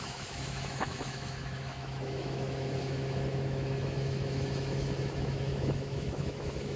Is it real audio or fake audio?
fake